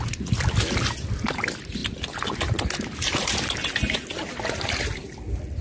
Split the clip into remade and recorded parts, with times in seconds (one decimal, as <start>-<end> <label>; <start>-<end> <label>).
0.0-5.6 recorded